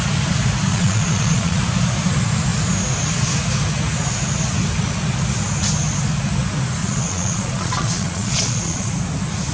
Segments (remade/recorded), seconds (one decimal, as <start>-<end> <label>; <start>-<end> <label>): 0.0-0.7 recorded; 0.7-1.6 remade; 1.6-6.8 recorded; 6.8-8.9 remade; 8.9-9.5 recorded